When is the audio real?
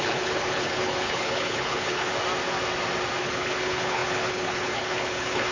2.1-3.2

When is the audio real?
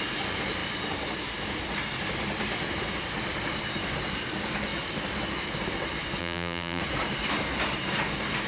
0.0-6.2; 6.8-8.5